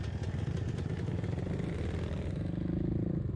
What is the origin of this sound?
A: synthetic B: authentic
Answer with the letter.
B